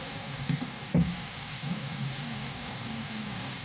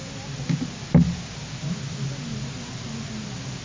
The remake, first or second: first